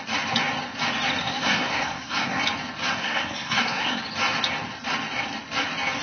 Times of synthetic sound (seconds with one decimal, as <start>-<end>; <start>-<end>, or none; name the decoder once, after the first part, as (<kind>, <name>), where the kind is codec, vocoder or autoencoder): 1.2-2.4 (codec, SNAC); 2.9-4.0